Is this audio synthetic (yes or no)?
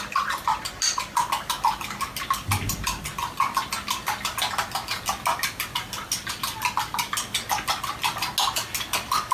no